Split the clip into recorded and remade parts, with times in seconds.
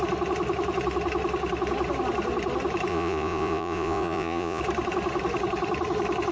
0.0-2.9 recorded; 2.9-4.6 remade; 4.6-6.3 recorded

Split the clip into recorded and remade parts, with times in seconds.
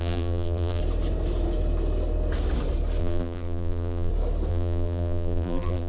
0.0-0.8 remade; 0.8-3.0 recorded; 3.0-4.1 remade; 4.1-4.5 recorded; 4.5-5.9 remade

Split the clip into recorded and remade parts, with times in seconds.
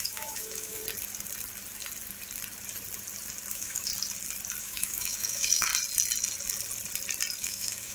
0.0-0.8 remade; 0.8-3.5 recorded; 3.5-3.9 remade; 3.9-4.6 recorded; 4.6-5.7 remade; 5.7-7.4 recorded; 7.4-7.9 remade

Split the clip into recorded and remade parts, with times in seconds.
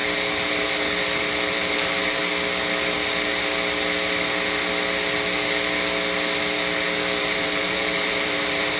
0.0-1.5 recorded; 1.5-2.2 remade; 2.2-7.2 recorded; 7.2-8.8 remade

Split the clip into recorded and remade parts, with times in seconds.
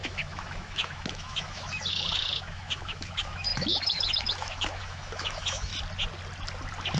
0.0-5.7 remade; 5.7-7.0 recorded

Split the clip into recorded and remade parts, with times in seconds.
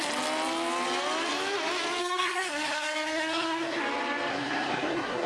0.0-2.0 recorded; 2.0-3.8 remade; 3.8-4.3 recorded; 4.3-5.3 remade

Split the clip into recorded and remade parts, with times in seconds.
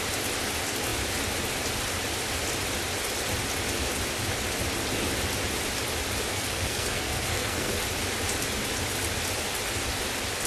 0.0-6.3 recorded; 6.3-7.7 remade; 7.7-10.5 recorded